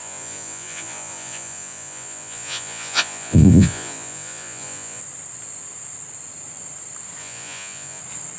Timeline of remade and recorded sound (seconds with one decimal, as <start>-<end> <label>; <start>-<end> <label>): 0.0-5.0 remade; 5.0-7.2 recorded; 7.2-8.0 remade; 8.0-8.4 recorded